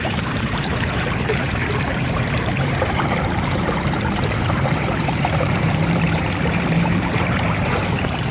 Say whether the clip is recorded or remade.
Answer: remade